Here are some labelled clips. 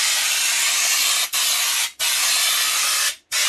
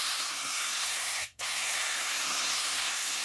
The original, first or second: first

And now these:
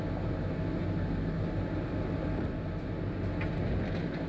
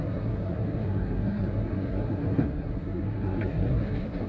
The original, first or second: first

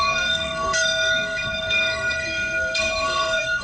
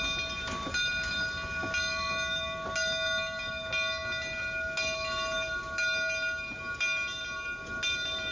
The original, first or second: second